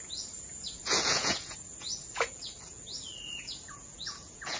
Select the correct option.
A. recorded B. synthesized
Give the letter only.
B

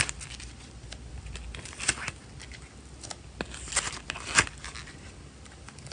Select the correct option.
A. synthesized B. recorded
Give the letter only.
B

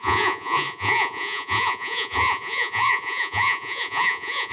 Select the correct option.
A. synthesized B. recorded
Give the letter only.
A